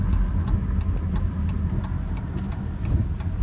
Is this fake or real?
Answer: real